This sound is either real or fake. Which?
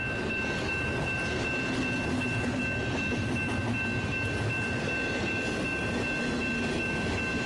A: real